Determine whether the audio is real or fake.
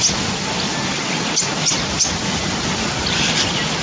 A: real